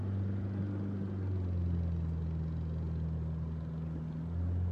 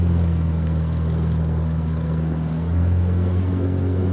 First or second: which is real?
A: first